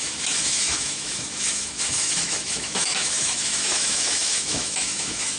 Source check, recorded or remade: remade